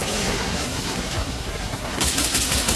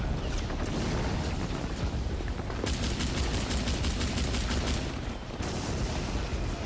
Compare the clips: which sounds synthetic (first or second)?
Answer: first